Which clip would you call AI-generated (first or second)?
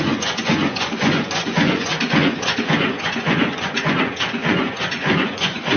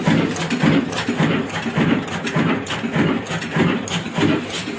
first